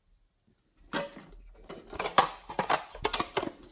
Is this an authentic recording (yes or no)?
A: yes